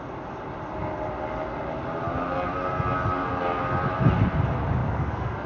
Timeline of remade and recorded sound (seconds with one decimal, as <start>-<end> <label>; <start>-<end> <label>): 0.0-4.8 recorded; 4.8-5.5 remade